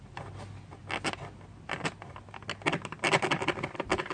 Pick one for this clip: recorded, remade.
recorded